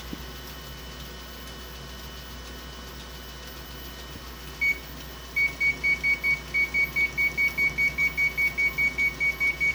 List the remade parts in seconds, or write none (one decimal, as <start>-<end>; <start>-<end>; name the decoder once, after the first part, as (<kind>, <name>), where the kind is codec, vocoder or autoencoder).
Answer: none

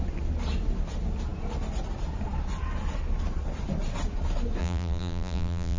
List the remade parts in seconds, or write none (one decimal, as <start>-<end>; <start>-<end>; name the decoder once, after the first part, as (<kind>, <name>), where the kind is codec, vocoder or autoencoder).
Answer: 4.6-5.8 (vocoder, BigVGAN v2)

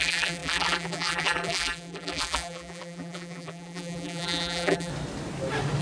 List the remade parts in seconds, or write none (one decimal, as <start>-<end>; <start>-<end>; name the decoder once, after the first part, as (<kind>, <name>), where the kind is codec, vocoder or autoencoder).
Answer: 0.0-4.9 (vocoder, BigVGAN v2)

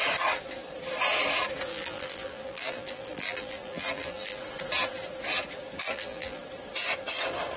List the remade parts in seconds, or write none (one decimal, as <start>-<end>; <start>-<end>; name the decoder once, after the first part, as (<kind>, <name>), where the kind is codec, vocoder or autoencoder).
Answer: 1.7-4.4 (vocoder, BigVGAN v2); 5.8-6.4

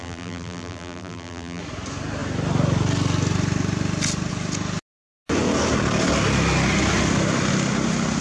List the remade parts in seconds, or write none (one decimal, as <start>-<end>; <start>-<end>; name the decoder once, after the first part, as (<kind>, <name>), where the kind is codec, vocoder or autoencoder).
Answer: 0.0-1.6 (vocoder, BigVGAN v2)

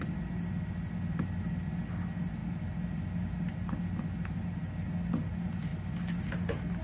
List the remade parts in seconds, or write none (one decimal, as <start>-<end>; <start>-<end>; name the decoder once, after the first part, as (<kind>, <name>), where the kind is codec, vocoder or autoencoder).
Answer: none